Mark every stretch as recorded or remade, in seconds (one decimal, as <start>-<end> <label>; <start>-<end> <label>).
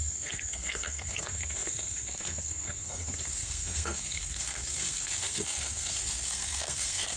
0.0-7.2 remade